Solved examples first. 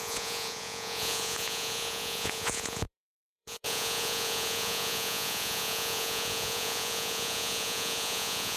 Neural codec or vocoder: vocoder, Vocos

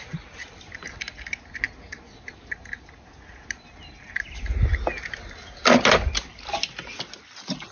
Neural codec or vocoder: none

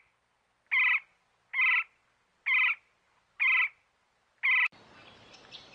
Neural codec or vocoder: none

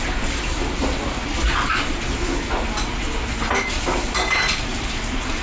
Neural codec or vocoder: none